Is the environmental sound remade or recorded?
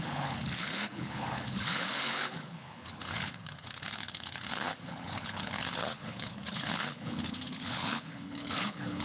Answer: remade